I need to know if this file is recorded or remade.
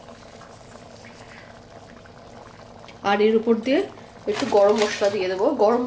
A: recorded